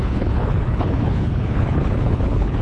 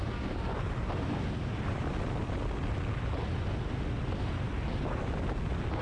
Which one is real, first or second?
second